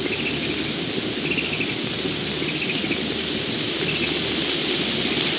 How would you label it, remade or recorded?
recorded